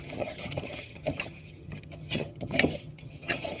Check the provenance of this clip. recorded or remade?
remade